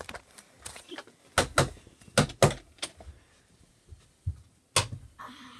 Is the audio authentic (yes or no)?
yes